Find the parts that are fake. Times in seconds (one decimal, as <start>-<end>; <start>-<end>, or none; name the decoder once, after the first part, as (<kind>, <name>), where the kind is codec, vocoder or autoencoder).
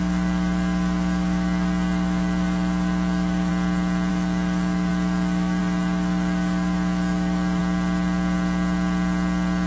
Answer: 0.0-3.5 (autoencoder, DAC-VAE); 4.1-7.6